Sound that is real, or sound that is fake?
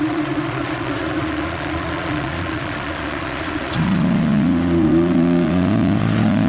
fake